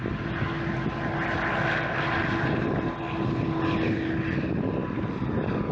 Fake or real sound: real